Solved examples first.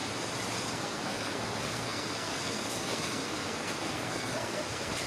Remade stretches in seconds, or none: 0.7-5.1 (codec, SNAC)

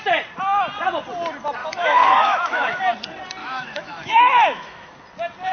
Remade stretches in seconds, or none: 1.6-2.8 (autoencoder, DAC-VAE); 3.4-4.9

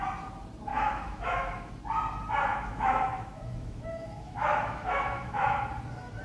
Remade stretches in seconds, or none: 0.7-1.7 (autoencoder, DAC-VAE); 2.5-5.7

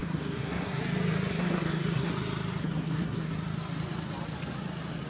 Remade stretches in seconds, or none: 0.0-0.8 (codec, SNAC); 1.3-2.1; 2.6-3.3

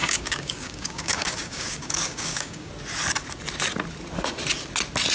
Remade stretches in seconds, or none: 0.0-2.7 (codec, DAC)

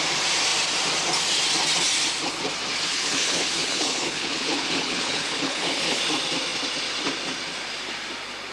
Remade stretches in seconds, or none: 2.9-6.0 (codec, HILCodec)